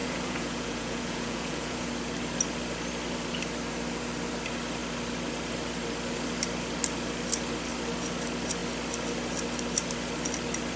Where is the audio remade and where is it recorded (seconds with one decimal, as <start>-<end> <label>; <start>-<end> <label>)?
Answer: 0.0-1.9 remade; 1.9-10.8 recorded